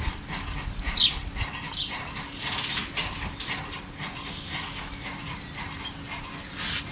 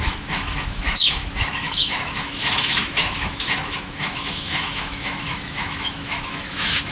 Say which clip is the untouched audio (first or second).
first